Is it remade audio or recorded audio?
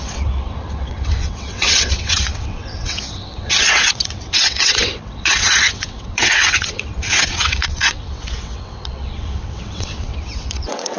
remade